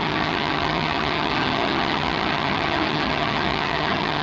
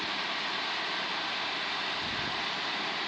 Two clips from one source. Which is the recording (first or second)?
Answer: second